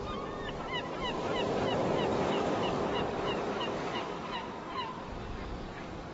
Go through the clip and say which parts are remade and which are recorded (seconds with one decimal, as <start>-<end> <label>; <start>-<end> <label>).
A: 0.0-2.1 recorded; 2.1-6.1 remade